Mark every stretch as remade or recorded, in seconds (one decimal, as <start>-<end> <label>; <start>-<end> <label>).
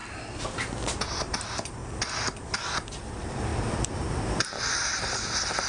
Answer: 0.0-1.0 recorded; 1.0-1.8 remade; 1.8-2.5 recorded; 2.5-5.7 remade